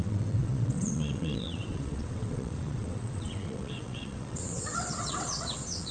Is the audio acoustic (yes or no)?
no